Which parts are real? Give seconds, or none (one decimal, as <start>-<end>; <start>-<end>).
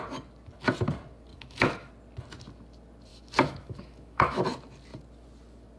0.0-1.3; 1.9-3.1; 4.4-5.8